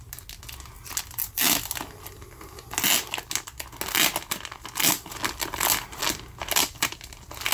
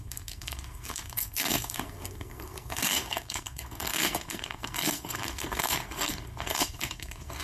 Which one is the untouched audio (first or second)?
first